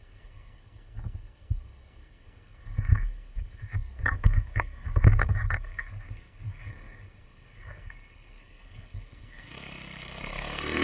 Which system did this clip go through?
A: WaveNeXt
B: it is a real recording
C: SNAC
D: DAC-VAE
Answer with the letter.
C